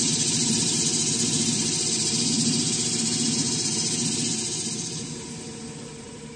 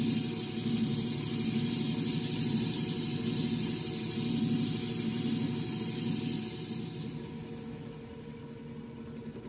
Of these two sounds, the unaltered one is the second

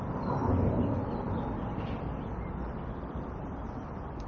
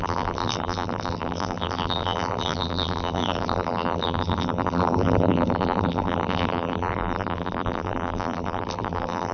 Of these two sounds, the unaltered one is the first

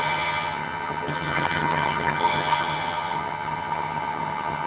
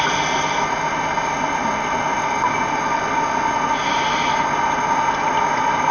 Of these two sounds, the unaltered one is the second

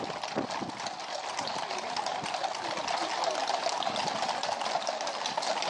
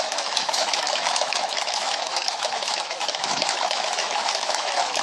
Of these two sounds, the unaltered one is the first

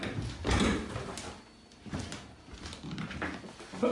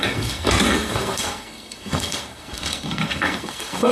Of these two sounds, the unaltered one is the first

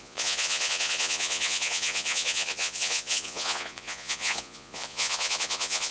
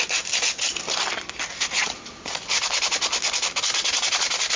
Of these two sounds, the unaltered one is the second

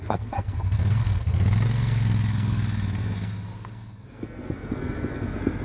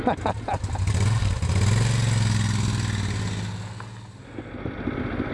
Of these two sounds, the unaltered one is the second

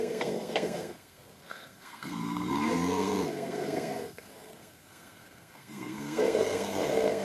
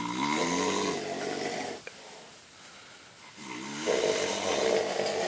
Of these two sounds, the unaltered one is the second